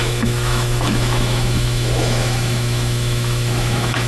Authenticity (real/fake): fake